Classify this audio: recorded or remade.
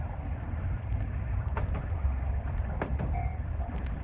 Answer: remade